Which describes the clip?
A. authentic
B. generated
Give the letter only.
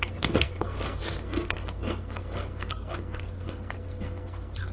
B